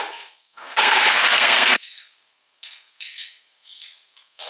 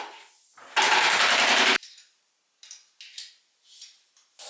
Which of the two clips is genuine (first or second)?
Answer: second